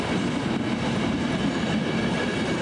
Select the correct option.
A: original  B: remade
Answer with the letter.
A